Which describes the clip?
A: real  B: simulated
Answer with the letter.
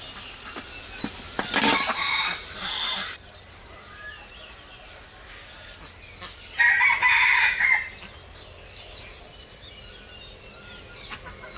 A